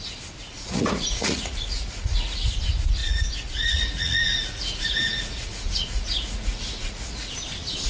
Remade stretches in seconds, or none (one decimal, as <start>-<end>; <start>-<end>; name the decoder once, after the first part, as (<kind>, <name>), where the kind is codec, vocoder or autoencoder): 0.5-2.6 (vocoder, Vocos); 3.0-7.3